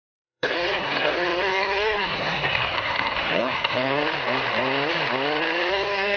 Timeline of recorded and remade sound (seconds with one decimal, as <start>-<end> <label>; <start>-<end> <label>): 0.0-4.0 remade; 4.0-5.7 recorded; 5.7-6.2 remade